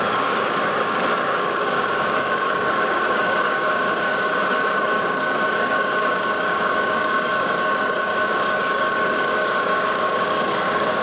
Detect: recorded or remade remade